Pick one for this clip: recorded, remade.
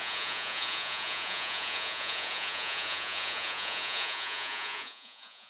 remade